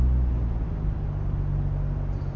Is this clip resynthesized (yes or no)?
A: no